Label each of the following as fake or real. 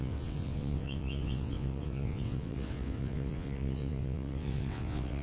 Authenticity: fake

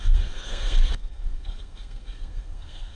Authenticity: fake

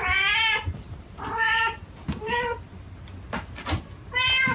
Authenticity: real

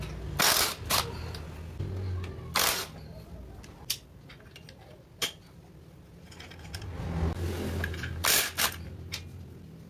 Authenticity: real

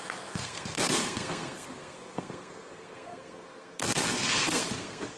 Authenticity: fake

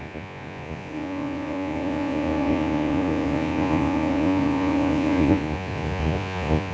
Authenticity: fake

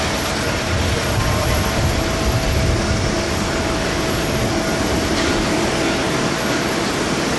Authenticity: real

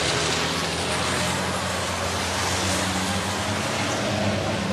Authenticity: real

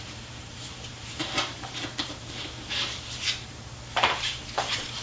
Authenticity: fake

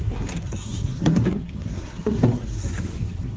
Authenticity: fake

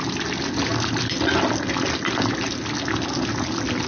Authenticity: real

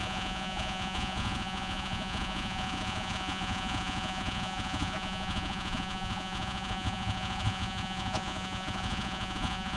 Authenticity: fake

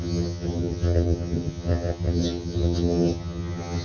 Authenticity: fake